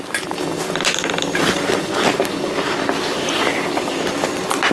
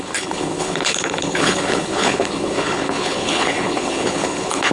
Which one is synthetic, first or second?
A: second